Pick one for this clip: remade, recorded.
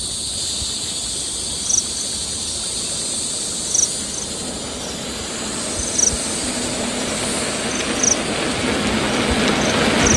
recorded